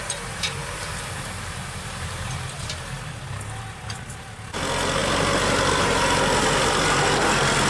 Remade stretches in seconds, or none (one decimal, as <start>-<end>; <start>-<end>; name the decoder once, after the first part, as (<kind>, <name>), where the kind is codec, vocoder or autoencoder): 0.6-2.6 (vocoder, BigVGAN v2)